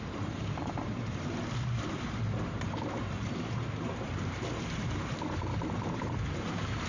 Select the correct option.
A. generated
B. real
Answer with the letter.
A